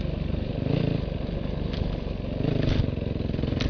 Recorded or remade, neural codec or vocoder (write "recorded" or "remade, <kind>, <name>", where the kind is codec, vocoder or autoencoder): recorded